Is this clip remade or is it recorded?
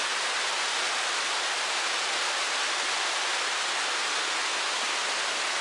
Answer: recorded